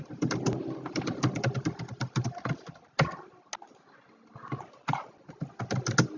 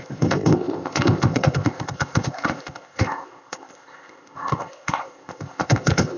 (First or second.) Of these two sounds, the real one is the first